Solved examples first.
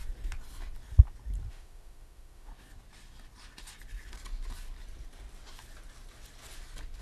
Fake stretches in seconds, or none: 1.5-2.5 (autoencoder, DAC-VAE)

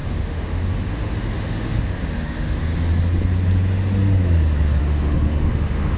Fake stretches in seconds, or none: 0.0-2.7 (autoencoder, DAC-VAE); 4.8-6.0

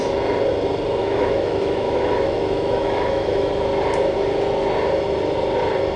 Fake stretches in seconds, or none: 1.0-3.5 (autoencoder, DAC-VAE)